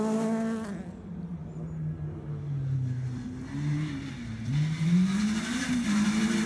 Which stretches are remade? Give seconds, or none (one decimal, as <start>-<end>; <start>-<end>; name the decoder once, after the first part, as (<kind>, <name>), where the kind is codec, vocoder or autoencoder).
none